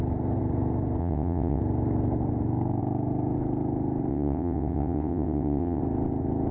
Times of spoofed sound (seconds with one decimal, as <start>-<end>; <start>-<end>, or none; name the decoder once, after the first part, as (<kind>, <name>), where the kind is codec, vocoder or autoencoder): 1.0-1.6 (vocoder, WaveNeXt); 4.1-5.8